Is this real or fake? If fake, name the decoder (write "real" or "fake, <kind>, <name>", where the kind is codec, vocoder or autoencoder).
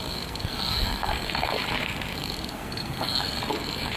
fake, codec, SNAC